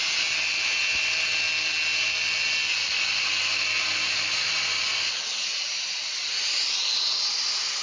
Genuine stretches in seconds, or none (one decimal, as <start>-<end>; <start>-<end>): 0.0-7.8